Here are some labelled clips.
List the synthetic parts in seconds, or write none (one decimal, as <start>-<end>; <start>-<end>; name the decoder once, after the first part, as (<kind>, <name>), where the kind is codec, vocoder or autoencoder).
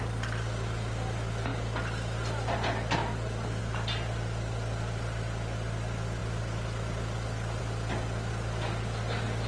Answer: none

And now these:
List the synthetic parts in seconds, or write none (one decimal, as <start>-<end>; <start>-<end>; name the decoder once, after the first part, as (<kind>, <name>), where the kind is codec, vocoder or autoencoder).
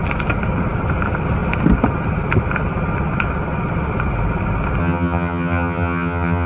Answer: 4.8-6.5 (vocoder, HiFi-GAN)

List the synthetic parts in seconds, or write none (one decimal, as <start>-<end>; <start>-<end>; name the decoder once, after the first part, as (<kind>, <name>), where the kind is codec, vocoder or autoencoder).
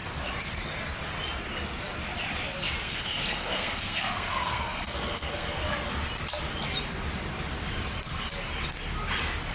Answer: 2.8-5.6 (codec, SNAC)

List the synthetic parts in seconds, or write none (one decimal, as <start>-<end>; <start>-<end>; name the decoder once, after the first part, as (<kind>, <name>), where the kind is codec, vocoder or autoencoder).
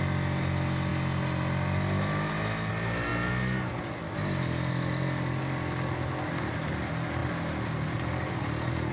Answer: none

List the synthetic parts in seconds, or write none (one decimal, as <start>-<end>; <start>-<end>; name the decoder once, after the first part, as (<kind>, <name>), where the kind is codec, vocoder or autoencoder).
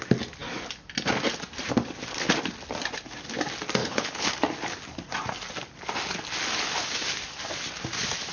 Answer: 3.8-4.3 (codec, HILCodec)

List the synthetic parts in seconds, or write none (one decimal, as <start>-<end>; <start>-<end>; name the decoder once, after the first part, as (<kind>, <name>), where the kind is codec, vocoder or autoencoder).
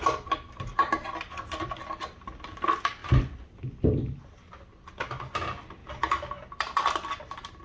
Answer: none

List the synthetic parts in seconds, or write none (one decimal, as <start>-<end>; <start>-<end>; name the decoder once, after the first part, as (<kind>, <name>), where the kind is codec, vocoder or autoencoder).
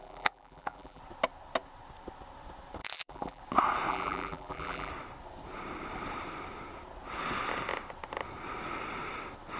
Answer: 0.0-1.0 (vocoder, BigVGAN v2); 2.8-3.4; 3.9-4.9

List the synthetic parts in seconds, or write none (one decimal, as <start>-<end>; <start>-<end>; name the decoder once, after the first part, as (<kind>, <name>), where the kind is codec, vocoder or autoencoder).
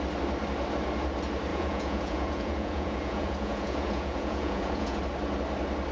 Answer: 1.5-5.0 (vocoder, Vocos)